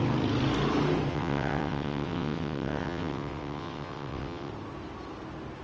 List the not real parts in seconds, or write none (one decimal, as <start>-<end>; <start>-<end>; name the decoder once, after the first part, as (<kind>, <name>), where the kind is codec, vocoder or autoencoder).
1.1-4.5 (vocoder, WaveNeXt)

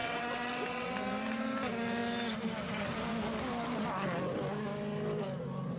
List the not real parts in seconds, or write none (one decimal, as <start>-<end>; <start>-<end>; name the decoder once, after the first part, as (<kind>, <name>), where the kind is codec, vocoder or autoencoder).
0.0-0.9 (vocoder, WaveNeXt)

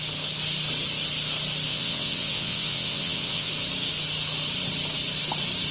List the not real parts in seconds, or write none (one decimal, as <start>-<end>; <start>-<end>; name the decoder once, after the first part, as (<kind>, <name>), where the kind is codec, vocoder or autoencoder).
1.7-3.5 (vocoder, WaveNeXt)

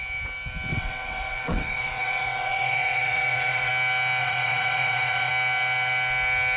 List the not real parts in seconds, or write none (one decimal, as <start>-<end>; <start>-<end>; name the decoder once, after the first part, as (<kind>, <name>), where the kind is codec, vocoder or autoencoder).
0.7-3.7 (vocoder, WaveNeXt); 4.2-5.3

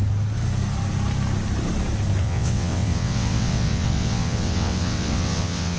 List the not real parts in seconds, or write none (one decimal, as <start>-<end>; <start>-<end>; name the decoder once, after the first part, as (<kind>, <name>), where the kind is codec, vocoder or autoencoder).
2.2-5.8 (vocoder, WaveNeXt)

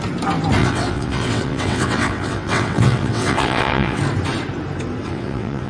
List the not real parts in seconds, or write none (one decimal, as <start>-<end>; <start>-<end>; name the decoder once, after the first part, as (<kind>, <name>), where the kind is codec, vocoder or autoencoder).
0.6-4.0 (vocoder, WaveNeXt); 5.0-5.7

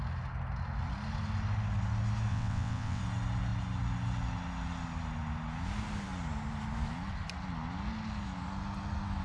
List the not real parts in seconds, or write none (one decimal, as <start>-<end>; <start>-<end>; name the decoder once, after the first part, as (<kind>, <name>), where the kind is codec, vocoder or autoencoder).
2.3-3.0 (vocoder, WaveNeXt)